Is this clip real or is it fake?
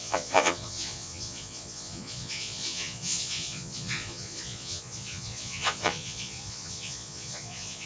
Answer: fake